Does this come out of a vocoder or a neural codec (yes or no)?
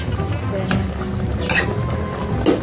no